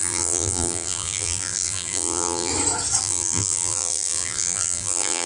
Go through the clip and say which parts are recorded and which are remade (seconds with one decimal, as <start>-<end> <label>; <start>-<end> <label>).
0.0-2.5 remade; 2.5-3.0 recorded; 3.0-5.3 remade